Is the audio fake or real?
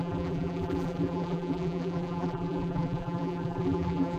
fake